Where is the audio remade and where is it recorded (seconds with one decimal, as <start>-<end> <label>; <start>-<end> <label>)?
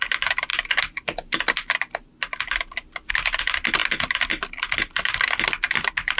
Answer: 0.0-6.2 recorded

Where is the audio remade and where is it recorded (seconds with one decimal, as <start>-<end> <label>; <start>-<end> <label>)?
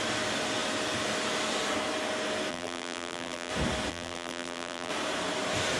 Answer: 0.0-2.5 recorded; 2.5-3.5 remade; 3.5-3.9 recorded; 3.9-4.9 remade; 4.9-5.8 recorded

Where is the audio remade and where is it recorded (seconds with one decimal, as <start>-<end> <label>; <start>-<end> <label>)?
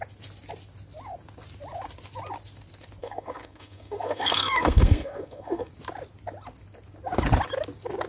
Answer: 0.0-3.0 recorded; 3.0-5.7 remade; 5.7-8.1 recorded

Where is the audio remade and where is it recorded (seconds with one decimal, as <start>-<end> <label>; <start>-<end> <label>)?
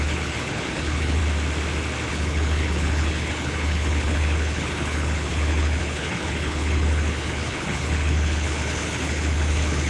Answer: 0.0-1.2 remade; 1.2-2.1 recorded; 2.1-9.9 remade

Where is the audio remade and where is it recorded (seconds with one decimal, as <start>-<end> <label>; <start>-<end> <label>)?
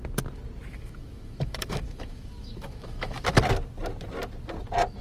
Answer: 0.0-0.7 recorded; 0.7-3.4 remade; 3.4-5.0 recorded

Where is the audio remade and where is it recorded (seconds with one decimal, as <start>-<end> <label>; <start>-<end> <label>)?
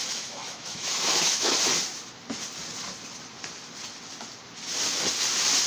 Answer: 0.0-1.5 remade; 1.5-5.7 recorded